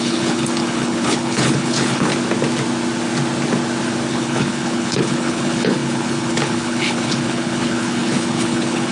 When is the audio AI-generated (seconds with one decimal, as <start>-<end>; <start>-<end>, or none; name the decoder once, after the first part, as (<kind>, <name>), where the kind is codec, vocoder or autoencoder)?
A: 0.0-2.1 (codec, HILCodec); 4.1-8.9